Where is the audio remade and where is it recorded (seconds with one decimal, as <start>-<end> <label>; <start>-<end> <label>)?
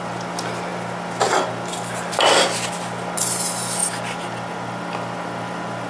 0.0-5.9 recorded